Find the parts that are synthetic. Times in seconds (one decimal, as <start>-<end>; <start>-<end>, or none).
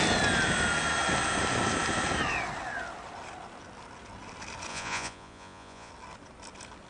4.7-5.9